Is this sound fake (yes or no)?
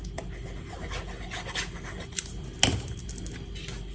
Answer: no